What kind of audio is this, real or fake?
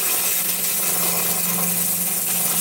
real